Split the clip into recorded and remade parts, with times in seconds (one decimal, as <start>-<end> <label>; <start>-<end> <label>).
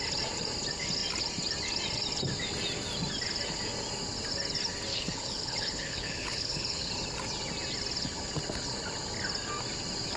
0.0-4.9 recorded; 4.9-6.9 remade; 6.9-10.2 recorded